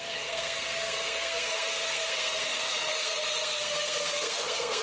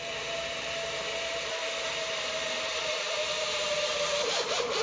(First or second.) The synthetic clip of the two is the first